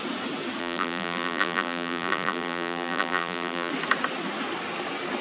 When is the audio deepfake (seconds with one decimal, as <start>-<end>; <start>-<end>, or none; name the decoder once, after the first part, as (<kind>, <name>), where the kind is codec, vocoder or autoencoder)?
0.6-3.7 (vocoder, BigVGAN v2)